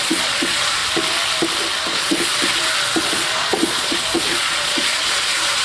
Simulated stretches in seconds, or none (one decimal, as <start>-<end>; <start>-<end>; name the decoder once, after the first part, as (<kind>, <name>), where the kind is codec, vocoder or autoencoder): 0.0-0.8 (vocoder, Vocos); 1.8-2.5; 3.0-5.6